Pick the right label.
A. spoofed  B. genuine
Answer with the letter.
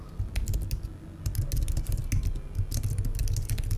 B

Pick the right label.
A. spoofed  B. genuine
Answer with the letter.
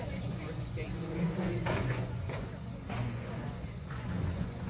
A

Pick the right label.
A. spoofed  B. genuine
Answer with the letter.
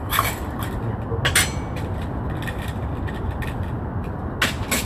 B